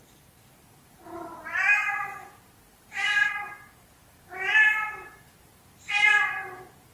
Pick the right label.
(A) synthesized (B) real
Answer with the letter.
A